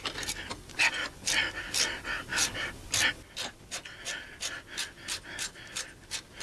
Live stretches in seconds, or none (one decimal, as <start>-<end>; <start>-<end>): 0.0-6.4